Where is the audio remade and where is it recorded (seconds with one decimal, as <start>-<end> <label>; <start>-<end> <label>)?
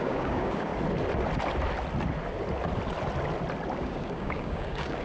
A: 0.0-0.7 remade; 0.7-3.7 recorded; 3.7-5.0 remade